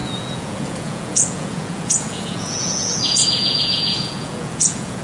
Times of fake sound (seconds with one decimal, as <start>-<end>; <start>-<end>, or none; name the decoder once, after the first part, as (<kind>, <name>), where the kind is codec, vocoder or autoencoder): 0.0-5.0 (vocoder, Vocos)